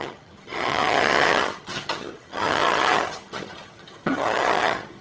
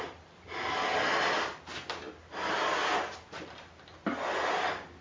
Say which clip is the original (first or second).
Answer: second